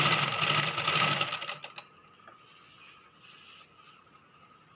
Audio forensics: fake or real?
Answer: real